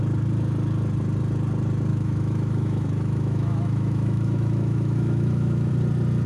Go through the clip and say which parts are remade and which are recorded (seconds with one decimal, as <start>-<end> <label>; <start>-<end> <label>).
0.0-1.9 recorded; 1.9-5.7 remade; 5.7-6.3 recorded